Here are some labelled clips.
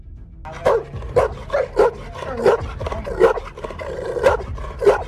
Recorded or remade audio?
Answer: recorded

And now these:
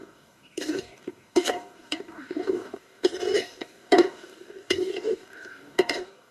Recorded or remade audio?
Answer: remade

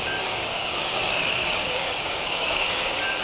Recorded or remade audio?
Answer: remade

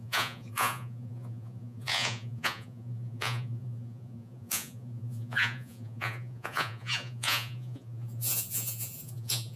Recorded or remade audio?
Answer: remade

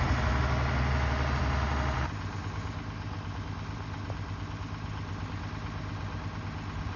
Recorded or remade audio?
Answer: recorded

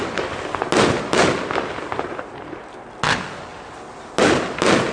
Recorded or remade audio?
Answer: recorded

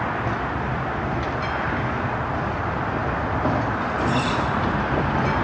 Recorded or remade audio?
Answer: recorded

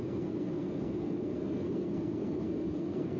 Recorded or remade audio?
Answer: remade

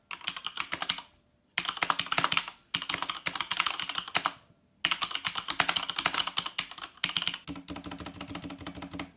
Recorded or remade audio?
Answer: recorded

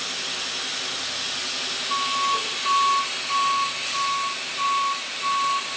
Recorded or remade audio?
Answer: recorded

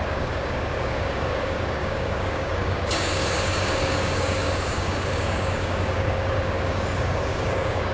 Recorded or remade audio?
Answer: remade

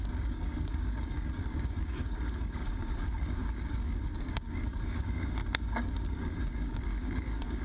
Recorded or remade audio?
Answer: remade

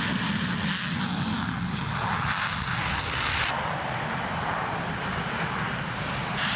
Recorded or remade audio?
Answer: recorded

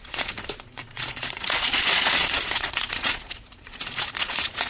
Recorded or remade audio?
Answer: remade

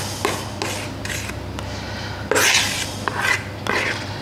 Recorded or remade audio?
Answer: recorded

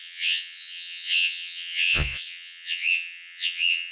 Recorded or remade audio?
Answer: remade